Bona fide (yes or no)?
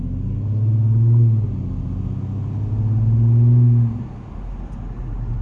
yes